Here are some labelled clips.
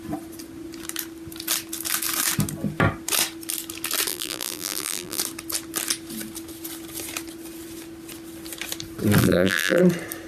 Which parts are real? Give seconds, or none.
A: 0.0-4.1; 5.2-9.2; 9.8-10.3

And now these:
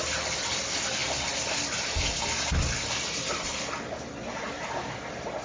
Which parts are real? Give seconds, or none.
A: 0.0-5.4

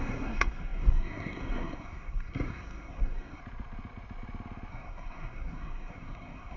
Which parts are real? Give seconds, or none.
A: 3.4-4.7

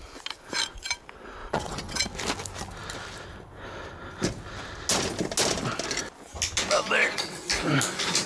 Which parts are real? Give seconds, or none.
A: 0.0-1.4; 2.0-7.0; 7.5-8.3